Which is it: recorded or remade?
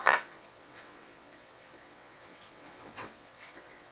remade